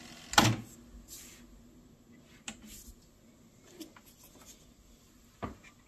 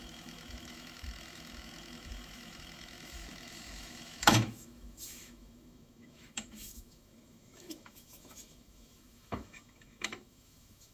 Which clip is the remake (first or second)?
second